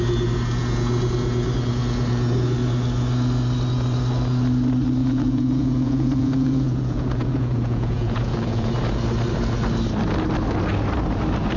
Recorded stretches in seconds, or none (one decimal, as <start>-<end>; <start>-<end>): 0.0-5.0; 8.7-11.6